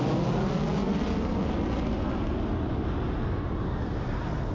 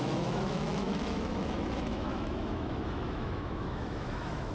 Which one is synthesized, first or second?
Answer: second